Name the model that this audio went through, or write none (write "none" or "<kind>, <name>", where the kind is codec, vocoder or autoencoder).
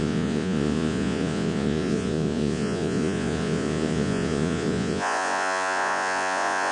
vocoder, Vocos